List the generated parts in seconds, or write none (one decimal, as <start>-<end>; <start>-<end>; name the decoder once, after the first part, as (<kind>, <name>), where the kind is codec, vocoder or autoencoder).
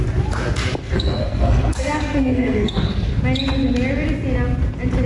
0.8-3.1 (codec, SNAC)